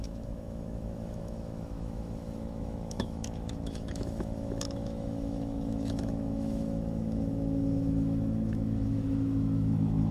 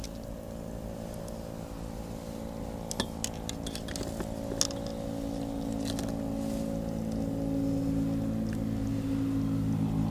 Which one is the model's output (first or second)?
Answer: first